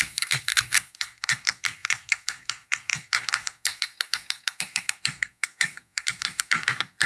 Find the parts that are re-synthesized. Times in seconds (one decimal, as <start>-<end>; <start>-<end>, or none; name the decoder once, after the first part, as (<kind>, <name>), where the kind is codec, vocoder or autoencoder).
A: 0.0-7.1 (codec, SNAC)